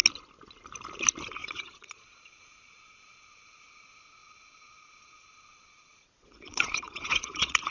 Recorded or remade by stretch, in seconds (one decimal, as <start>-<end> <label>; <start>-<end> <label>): 0.0-1.4 recorded; 1.4-3.6 remade; 3.6-4.2 recorded; 4.2-7.7 remade

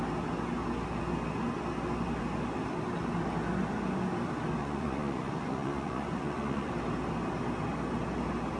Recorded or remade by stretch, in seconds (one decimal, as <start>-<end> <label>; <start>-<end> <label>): 0.0-4.6 recorded; 4.6-6.7 remade; 6.7-8.6 recorded

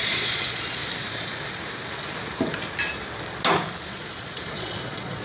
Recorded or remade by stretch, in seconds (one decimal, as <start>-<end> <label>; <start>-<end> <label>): 0.0-0.8 remade; 0.8-3.9 recorded; 3.9-5.2 remade

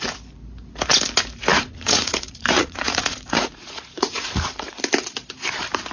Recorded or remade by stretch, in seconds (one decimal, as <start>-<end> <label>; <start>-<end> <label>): 0.0-1.5 recorded; 1.5-4.8 remade; 4.8-5.9 recorded